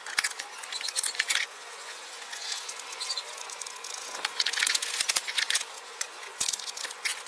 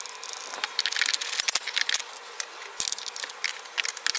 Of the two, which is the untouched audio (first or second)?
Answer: second